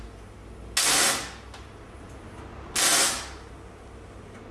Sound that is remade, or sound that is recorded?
recorded